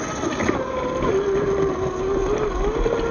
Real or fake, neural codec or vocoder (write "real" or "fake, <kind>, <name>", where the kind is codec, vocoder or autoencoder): real